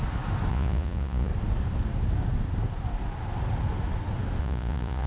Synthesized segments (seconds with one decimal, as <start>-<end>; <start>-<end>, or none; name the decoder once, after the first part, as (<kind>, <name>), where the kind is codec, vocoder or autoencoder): 0.5-1.3 (vocoder, Vocos); 4.4-5.1